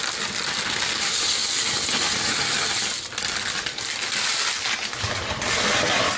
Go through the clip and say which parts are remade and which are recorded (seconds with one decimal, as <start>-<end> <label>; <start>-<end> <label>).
0.0-4.3 remade; 4.3-6.2 recorded